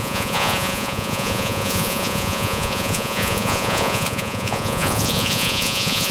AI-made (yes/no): yes